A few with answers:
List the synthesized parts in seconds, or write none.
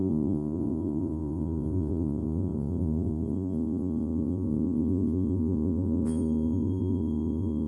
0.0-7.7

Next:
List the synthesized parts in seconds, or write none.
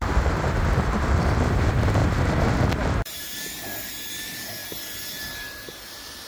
0.0-4.6; 5.6-6.3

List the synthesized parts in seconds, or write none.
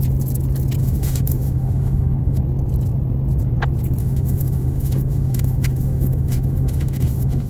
0.8-2.4; 4.0-7.5